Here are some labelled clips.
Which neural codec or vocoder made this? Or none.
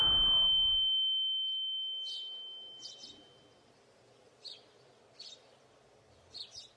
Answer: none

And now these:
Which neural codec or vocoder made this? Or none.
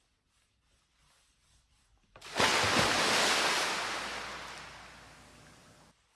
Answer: none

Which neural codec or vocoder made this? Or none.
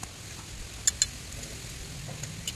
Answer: none